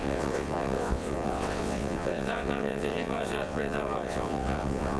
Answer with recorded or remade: remade